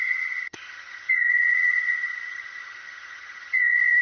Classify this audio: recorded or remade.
remade